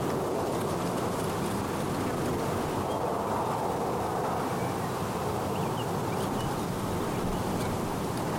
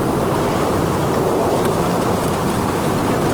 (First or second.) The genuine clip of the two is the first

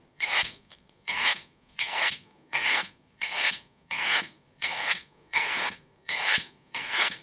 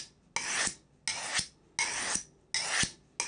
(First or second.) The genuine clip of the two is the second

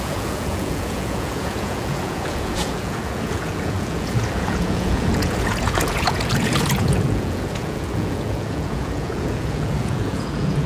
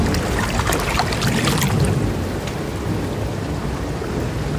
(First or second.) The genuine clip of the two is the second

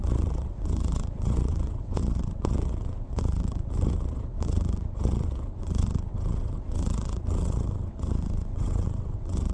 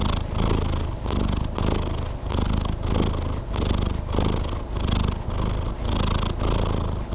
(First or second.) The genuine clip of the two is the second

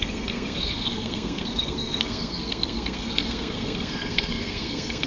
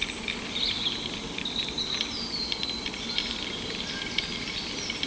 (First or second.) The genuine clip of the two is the second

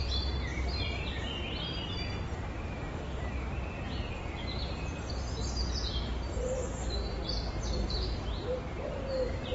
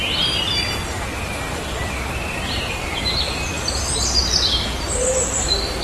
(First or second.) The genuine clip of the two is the first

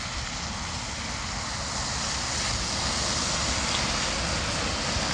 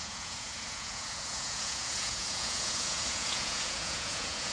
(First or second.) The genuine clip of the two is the first